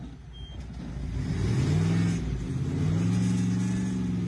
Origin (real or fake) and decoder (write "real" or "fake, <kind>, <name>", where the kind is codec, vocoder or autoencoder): real